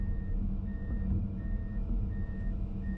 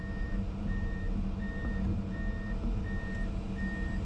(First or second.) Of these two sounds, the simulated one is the first